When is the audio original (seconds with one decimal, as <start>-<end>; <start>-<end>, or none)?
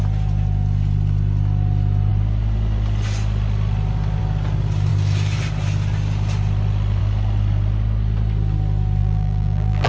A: 0.0-9.0